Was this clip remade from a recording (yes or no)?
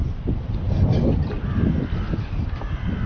no